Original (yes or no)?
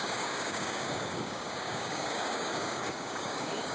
no